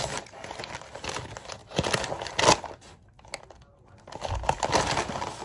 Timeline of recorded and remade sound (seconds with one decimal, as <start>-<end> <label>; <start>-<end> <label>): 0.0-5.4 recorded